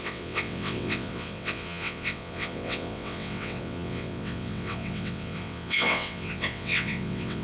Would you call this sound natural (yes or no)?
no